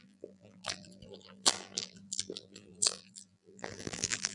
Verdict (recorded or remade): remade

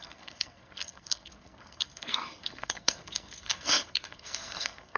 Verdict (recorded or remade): remade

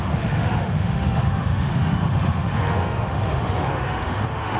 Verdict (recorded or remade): remade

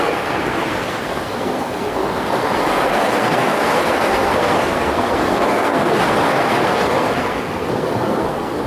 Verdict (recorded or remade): remade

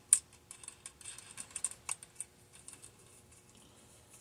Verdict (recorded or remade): recorded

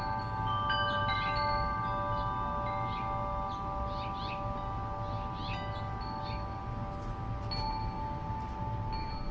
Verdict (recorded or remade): recorded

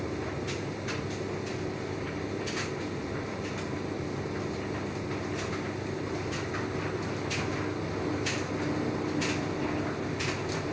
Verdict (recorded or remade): recorded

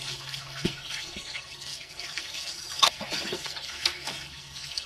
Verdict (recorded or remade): remade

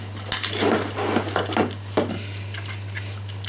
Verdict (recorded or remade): recorded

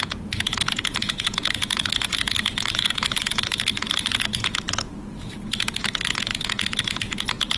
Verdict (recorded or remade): remade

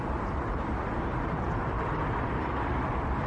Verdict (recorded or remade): remade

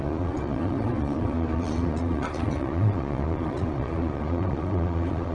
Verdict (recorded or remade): remade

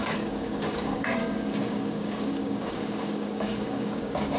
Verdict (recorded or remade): remade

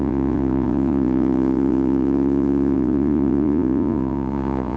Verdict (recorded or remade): remade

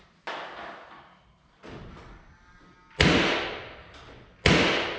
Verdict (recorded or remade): recorded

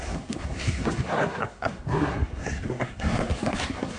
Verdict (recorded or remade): remade